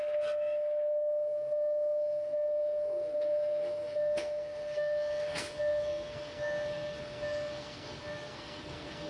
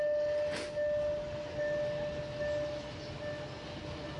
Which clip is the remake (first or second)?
first